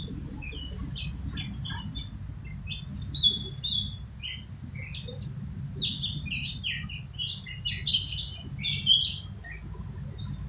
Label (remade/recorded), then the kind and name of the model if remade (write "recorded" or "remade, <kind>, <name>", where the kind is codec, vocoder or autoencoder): recorded